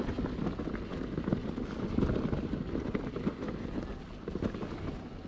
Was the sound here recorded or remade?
recorded